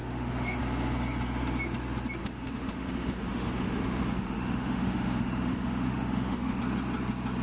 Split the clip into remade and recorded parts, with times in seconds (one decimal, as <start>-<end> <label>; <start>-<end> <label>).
0.0-0.6 remade; 0.6-2.2 recorded; 2.2-6.6 remade; 6.6-7.4 recorded

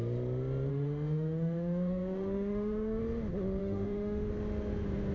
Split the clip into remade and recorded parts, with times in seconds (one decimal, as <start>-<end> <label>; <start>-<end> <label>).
0.0-0.7 recorded; 0.7-3.0 remade; 3.0-3.6 recorded; 3.6-4.3 remade; 4.3-5.1 recorded

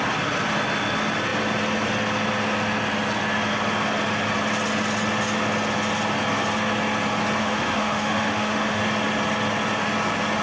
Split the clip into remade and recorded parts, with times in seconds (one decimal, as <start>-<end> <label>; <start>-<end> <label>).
0.0-7.4 recorded; 7.4-8.8 remade; 8.8-10.4 recorded

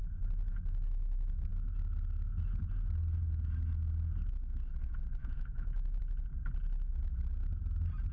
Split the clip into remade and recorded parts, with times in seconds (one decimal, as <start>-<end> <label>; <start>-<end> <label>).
0.0-5.2 recorded; 5.2-6.0 remade; 6.0-8.1 recorded

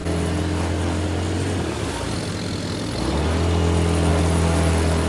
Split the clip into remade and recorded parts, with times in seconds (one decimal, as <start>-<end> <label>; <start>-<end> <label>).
0.0-5.1 recorded

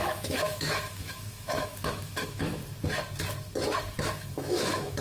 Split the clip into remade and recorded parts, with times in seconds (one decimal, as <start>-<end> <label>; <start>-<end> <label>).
0.0-2.6 remade; 2.6-4.0 recorded; 4.0-5.0 remade

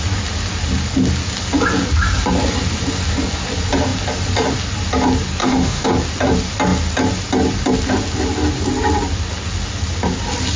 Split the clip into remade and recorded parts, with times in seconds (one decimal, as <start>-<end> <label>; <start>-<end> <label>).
0.0-5.4 recorded; 5.4-5.9 remade; 5.9-10.6 recorded